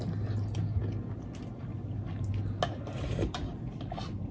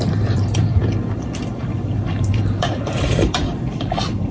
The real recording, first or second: first